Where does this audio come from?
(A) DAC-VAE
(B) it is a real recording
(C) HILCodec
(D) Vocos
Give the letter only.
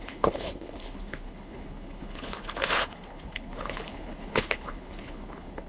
C